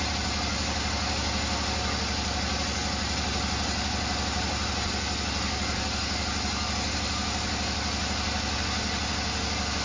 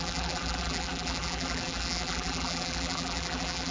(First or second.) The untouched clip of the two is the first